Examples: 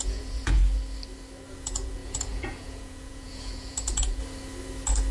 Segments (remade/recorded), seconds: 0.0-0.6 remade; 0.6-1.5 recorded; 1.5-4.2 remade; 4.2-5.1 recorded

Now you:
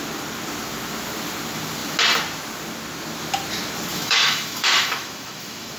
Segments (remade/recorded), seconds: 0.0-3.9 recorded; 3.9-5.8 remade

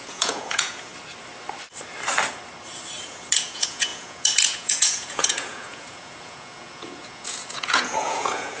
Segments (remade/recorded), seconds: 0.0-0.9 remade; 0.9-3.0 recorded; 3.0-8.6 remade

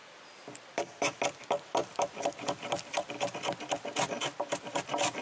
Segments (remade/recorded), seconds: 0.0-1.2 remade; 1.2-1.8 recorded; 1.8-4.6 remade; 4.6-5.2 recorded

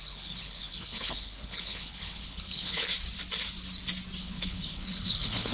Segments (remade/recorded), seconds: 0.0-2.9 remade; 2.9-4.2 recorded; 4.2-5.5 remade